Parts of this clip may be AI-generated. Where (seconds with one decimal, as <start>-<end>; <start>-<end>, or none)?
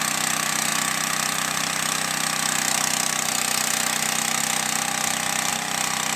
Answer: none